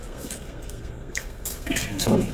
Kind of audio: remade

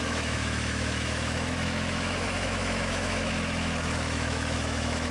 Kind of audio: remade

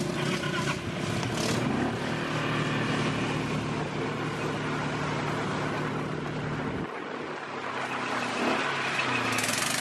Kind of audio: recorded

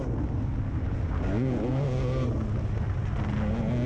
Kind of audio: recorded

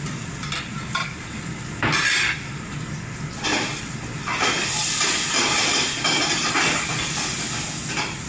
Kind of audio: recorded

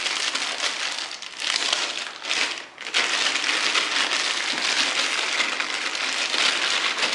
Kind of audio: recorded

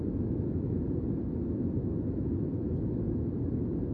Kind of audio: recorded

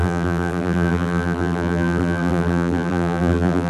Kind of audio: remade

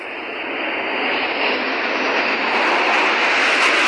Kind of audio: recorded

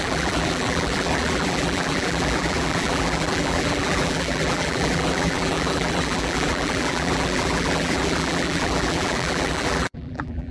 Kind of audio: remade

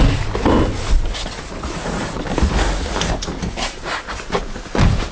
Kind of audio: recorded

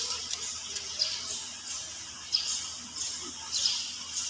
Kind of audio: recorded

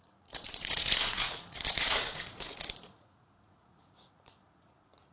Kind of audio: remade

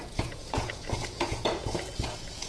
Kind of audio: remade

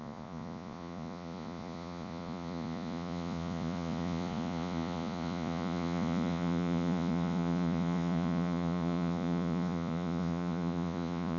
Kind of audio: remade